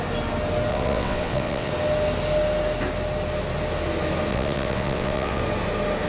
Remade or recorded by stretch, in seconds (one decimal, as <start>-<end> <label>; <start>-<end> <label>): 0.0-0.7 recorded; 0.7-1.7 remade; 1.7-4.3 recorded; 4.3-5.4 remade; 5.4-6.1 recorded

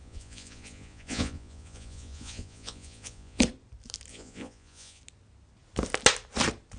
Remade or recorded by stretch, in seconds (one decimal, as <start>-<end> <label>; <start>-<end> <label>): 0.0-3.4 remade; 3.4-4.1 recorded; 4.1-5.0 remade; 5.0-6.8 recorded

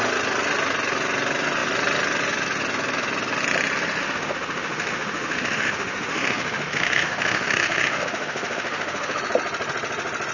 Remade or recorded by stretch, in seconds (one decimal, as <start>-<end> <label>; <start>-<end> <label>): 0.0-4.0 recorded; 4.0-9.2 remade; 9.2-10.3 recorded

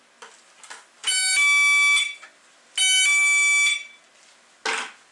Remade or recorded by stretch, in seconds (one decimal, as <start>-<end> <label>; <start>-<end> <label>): 0.0-5.1 recorded

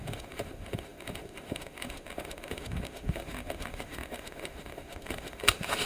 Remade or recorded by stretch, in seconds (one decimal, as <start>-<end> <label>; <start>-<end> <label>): 0.0-5.9 remade

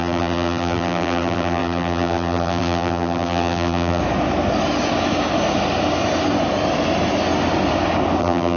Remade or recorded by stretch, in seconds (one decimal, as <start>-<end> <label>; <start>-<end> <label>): 0.0-4.0 remade; 4.0-8.2 recorded; 8.2-8.6 remade